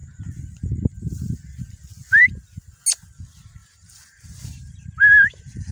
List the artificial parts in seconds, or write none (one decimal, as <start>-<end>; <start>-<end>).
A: 3.6-5.7